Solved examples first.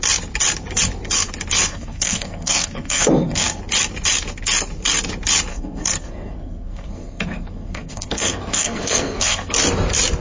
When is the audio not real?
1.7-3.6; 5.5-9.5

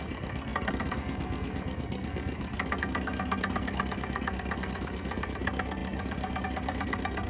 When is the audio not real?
0.0-7.3

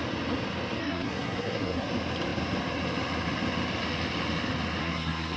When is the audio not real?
0.8-1.9; 4.8-5.4

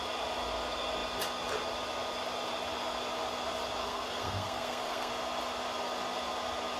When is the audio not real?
3.8-5.1